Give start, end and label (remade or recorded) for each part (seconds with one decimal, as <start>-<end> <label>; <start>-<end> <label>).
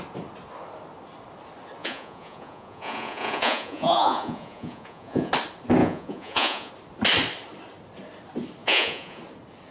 0.0-1.8 recorded; 1.8-5.3 remade; 5.3-5.8 recorded; 5.8-6.7 remade; 6.7-8.6 recorded; 8.6-9.2 remade; 9.2-9.7 recorded